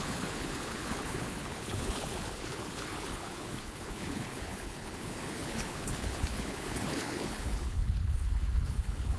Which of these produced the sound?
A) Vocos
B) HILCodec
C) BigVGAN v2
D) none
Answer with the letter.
B